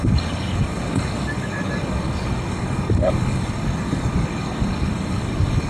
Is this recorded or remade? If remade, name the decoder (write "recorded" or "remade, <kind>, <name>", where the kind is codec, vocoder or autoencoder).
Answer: remade, codec, DAC